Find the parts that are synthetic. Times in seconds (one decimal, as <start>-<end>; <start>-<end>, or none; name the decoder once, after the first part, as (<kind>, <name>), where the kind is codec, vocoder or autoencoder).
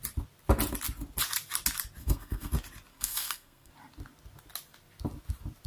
2.0-2.5 (codec, SNAC); 2.9-3.7